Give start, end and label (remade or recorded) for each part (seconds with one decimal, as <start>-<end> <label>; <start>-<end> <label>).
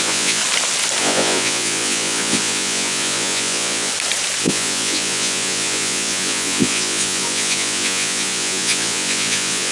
0.0-0.4 remade; 0.4-1.0 recorded; 1.0-3.9 remade; 3.9-4.4 recorded; 4.4-9.7 remade